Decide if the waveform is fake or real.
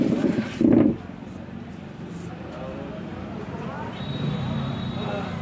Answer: fake